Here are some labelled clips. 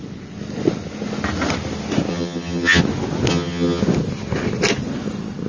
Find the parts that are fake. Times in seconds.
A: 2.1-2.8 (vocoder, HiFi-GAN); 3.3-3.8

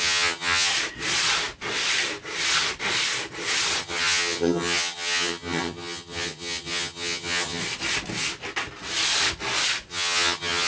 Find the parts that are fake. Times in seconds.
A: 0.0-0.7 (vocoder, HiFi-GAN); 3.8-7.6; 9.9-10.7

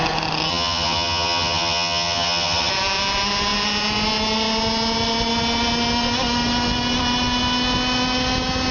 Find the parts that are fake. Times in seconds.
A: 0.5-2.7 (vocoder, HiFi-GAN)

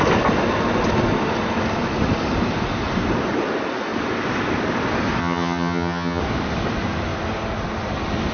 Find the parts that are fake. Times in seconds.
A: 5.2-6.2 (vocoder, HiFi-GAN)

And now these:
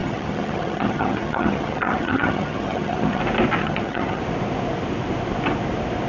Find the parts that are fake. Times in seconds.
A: 0.0-3.2 (vocoder, HiFi-GAN); 3.6-4.2

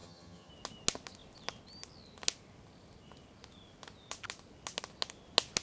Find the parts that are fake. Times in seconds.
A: 0.0-0.5 (vocoder, HiFi-GAN)